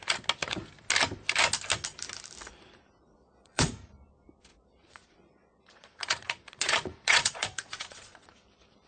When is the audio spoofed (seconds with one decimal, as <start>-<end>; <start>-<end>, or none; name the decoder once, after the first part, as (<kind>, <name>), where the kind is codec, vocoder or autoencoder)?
3.0-3.7 (vocoder, Vocos); 4.5-8.3